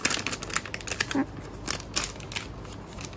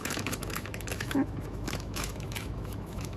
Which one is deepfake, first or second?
second